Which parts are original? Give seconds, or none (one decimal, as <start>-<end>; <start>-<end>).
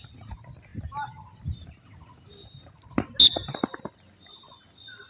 0.0-5.1